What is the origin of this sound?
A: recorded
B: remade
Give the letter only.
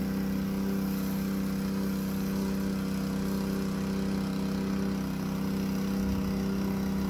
A